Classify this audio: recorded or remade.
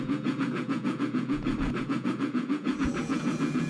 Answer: remade